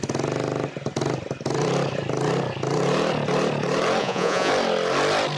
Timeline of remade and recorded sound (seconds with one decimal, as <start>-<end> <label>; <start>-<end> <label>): 0.0-4.0 recorded; 4.0-4.5 remade; 4.5-5.4 recorded